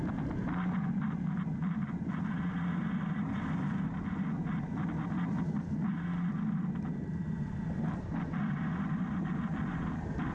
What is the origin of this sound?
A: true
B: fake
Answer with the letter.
A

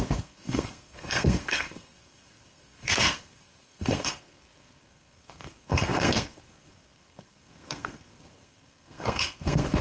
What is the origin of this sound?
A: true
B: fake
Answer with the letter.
B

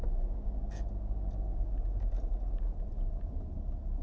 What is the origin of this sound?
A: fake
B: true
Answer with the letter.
B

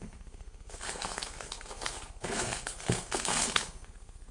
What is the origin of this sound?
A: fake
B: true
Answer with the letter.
A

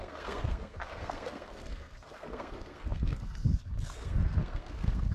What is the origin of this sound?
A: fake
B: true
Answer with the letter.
A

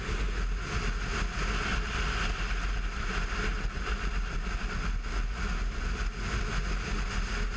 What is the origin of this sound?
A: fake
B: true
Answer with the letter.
B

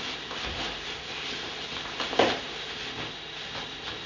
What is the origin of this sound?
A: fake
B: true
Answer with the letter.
B